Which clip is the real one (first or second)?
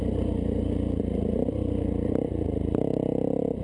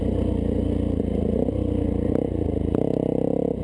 second